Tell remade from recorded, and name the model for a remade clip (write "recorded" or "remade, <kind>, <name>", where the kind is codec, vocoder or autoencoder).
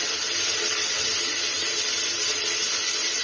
recorded